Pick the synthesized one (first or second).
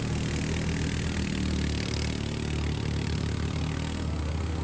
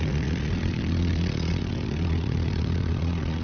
second